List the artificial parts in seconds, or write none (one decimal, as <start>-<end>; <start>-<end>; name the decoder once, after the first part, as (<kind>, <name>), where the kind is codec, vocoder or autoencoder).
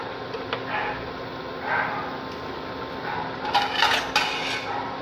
none